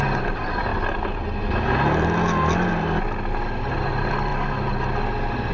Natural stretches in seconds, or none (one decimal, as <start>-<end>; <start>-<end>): 0.7-3.7; 4.3-5.5

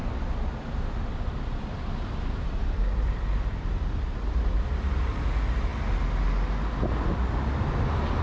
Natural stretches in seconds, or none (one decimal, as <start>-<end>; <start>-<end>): 4.9-8.2

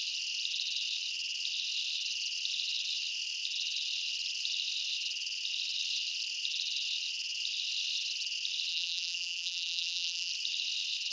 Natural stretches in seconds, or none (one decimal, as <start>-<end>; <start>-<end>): 0.0-8.7; 10.3-11.1

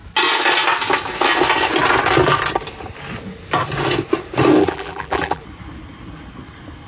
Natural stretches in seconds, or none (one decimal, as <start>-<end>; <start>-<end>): 0.0-4.6; 5.4-6.9

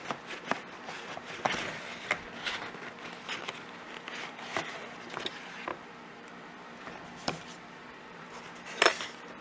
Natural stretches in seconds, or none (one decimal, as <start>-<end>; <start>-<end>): 0.0-5.7; 8.3-9.4

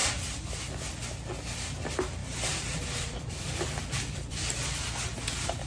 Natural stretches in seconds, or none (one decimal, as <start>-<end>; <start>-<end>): 0.0-2.2; 4.8-5.7